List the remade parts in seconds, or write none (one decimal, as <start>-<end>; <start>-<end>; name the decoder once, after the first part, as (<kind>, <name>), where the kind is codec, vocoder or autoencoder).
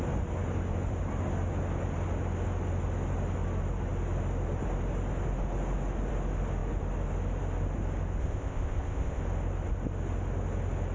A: 8.2-9.2 (codec, ZipCodec)